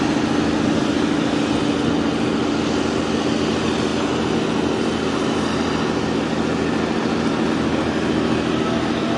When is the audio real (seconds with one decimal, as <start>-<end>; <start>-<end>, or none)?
0.0-9.2